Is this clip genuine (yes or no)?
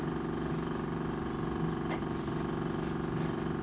yes